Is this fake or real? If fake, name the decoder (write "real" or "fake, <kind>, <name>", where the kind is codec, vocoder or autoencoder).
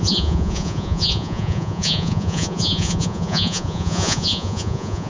fake, vocoder, Vocos